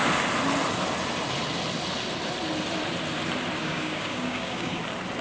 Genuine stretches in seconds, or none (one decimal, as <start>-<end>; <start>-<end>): 0.0-3.6; 4.8-5.2